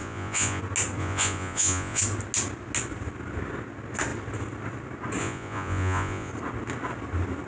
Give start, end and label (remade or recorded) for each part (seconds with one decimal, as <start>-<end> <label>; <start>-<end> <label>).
0.0-0.6 remade; 0.6-1.0 recorded; 1.0-2.0 remade; 2.0-5.2 recorded; 5.2-6.3 remade; 6.3-7.5 recorded